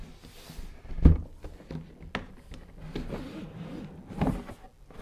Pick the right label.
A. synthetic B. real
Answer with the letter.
B